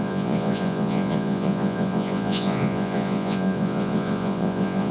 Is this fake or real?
fake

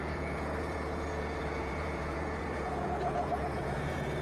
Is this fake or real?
fake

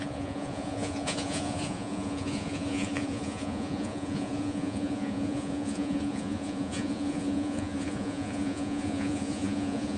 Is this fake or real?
fake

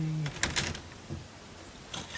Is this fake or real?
real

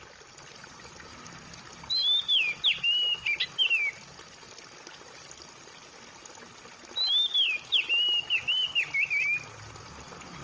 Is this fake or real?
real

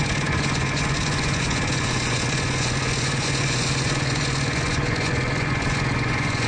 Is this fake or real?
fake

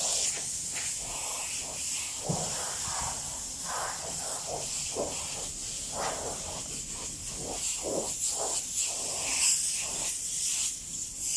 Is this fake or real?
real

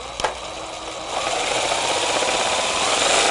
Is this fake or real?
real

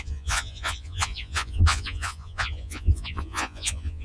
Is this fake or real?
fake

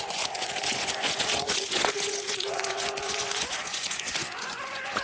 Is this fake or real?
fake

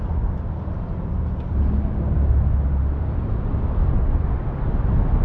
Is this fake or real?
real